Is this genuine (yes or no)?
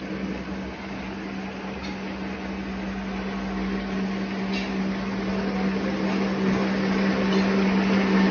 yes